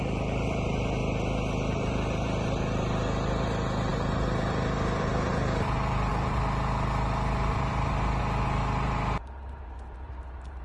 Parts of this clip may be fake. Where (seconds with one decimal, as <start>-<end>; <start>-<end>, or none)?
0.0-1.0; 1.7-6.1; 8.2-10.6